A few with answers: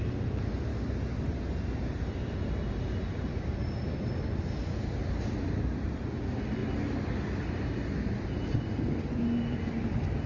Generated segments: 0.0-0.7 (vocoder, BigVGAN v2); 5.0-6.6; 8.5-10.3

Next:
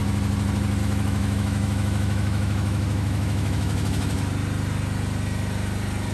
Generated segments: 0.8-4.3 (autoencoder, DAC-VAE)

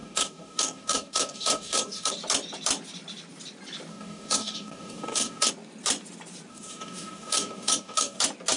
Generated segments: 0.0-2.1 (codec, DAC); 3.9-5.5; 6.5-8.2

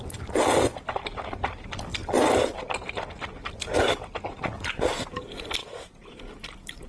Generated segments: 5.6-6.2 (vocoder, Vocos)